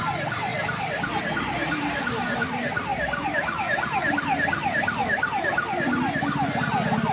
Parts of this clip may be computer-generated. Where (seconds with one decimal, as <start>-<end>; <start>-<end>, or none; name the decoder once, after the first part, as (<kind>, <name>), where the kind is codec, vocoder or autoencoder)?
0.5-1.2 (vocoder, BigVGAN v2)